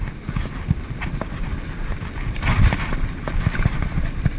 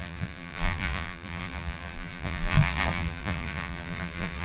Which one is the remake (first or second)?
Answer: second